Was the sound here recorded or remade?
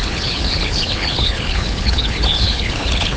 remade